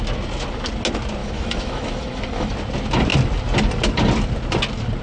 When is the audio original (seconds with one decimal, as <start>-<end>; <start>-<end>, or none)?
0.0-1.2; 2.5-5.0